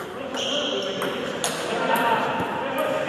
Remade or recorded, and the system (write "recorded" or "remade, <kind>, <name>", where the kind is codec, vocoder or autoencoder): recorded